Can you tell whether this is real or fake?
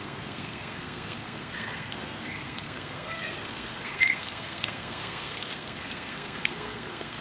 fake